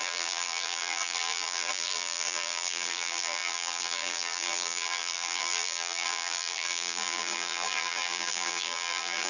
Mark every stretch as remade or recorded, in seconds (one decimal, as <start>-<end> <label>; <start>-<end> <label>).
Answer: 0.0-9.3 remade